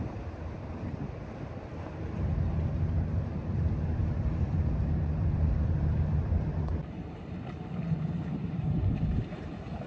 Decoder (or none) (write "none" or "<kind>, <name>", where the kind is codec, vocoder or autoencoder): vocoder, BigVGAN v2